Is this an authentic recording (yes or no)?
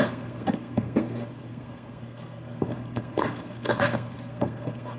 no